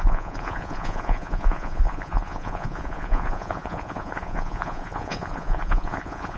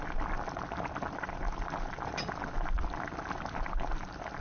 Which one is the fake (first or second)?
first